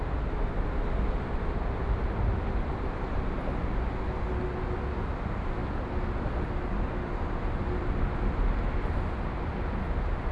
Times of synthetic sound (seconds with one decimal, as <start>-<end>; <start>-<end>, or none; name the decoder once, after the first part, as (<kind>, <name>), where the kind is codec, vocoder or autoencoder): none